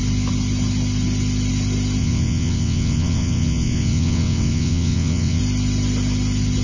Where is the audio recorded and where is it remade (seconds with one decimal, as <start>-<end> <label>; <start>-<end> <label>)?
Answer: 0.0-2.0 recorded; 2.0-5.4 remade; 5.4-6.6 recorded